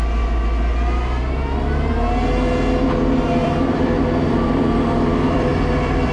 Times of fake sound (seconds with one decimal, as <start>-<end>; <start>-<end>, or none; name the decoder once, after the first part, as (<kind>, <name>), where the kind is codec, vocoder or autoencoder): 3.4-6.1 (vocoder, BigVGAN v2)